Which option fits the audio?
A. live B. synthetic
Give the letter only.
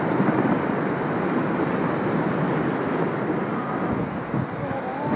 A